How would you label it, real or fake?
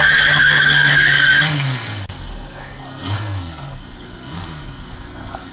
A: fake